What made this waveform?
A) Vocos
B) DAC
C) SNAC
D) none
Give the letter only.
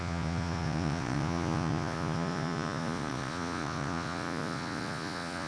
A